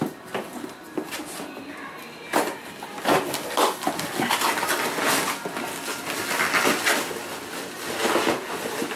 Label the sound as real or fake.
real